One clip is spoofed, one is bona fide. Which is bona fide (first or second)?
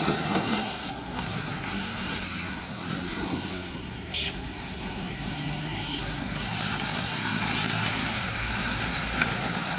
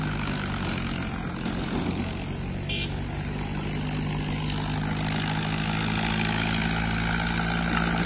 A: second